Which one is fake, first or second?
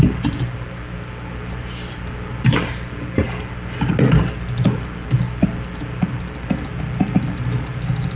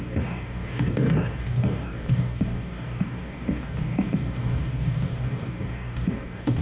second